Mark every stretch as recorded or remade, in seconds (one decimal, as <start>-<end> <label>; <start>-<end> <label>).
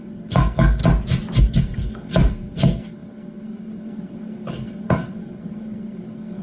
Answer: 0.0-0.8 remade; 0.8-1.4 recorded; 1.4-6.4 remade